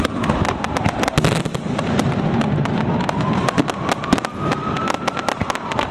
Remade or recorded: recorded